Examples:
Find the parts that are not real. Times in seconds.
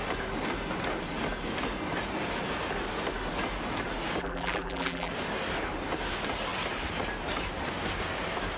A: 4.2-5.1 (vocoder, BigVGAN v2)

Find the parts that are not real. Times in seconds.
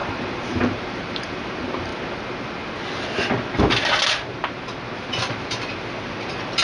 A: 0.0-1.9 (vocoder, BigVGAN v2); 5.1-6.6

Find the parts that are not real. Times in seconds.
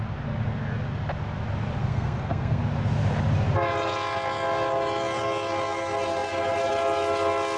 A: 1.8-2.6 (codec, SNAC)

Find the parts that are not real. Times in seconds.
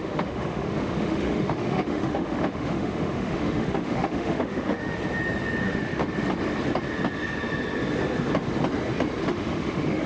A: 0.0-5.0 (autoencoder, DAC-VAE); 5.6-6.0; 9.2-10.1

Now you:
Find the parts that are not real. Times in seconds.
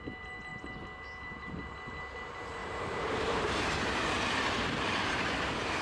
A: 2.6-3.7 (vocoder, BigVGAN v2)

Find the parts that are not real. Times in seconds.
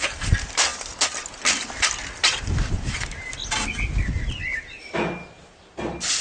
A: none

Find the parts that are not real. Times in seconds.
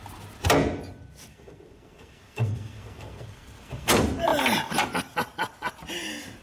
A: 1.3-3.9 (codec, SNAC)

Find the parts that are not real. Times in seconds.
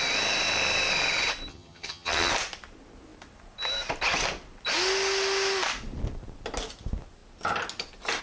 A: 1.5-2.3 (vocoder, HiFi-GAN)